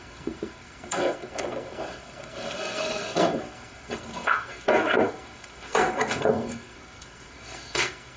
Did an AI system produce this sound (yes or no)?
yes